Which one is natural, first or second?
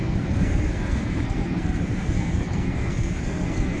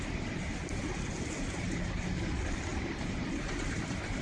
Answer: second